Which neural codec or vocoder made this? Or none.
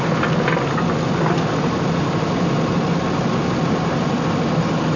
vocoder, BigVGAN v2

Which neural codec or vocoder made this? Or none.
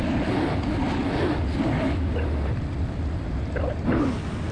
none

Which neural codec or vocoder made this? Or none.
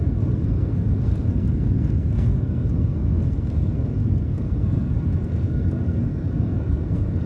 codec, SNAC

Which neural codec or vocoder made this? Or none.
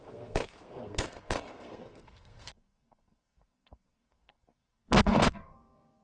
codec, SNAC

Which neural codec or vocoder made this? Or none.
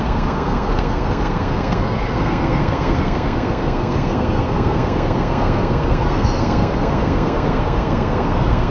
codec, SNAC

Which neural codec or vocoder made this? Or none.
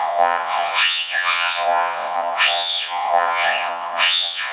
vocoder, WaveNeXt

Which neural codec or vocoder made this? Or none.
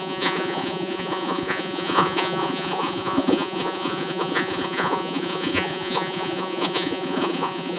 vocoder, Vocos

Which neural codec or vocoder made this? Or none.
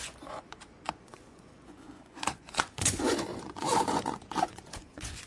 vocoder, Vocos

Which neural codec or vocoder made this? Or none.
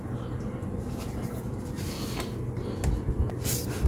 none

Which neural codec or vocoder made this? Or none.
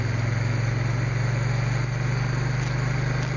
none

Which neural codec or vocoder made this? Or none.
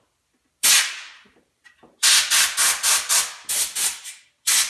none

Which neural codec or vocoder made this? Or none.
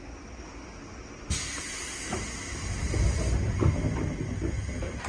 none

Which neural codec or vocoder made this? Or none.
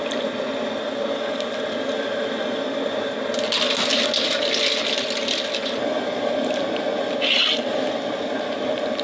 none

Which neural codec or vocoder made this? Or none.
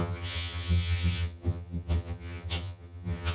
vocoder, HiFi-GAN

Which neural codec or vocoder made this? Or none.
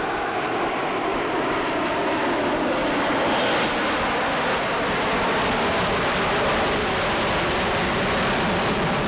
none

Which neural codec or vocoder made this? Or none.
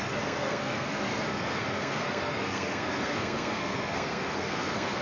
codec, SNAC